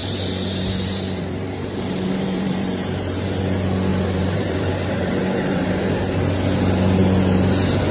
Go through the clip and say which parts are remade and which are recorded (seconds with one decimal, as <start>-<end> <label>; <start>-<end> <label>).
0.0-3.4 remade; 3.4-3.9 recorded; 3.9-5.8 remade; 5.8-7.9 recorded

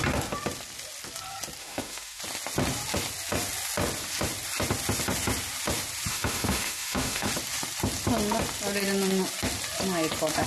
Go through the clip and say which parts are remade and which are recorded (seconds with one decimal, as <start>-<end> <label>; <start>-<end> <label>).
0.0-1.6 recorded; 1.6-2.2 remade; 2.2-6.1 recorded; 6.1-7.3 remade; 7.3-10.5 recorded